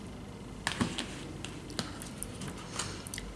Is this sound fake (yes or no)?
no